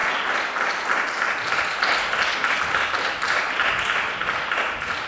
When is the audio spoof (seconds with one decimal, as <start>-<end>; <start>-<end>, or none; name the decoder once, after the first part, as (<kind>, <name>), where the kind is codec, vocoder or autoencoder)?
none